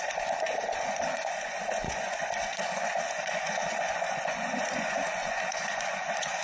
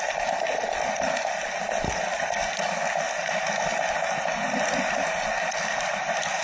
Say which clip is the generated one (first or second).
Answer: first